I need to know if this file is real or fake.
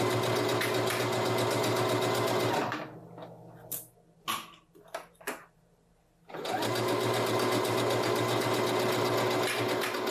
real